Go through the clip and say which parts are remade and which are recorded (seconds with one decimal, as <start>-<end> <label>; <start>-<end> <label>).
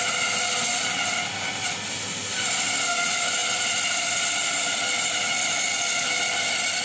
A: 0.0-6.8 recorded